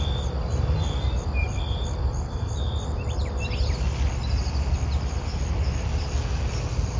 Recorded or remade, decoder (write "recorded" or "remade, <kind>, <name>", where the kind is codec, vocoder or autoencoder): recorded